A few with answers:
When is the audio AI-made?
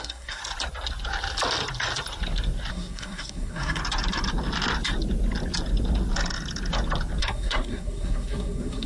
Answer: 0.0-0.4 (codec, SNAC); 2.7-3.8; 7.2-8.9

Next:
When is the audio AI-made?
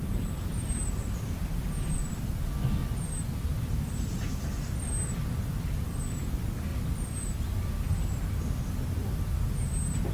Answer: none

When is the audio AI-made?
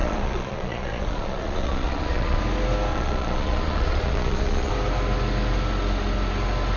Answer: 0.0-2.4 (vocoder, Vocos); 2.9-4.7